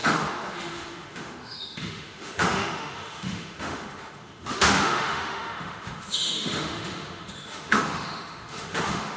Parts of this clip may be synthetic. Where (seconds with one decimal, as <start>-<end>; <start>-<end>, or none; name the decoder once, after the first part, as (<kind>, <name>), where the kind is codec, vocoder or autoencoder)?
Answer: 0.0-9.2 (autoencoder, DAC-VAE)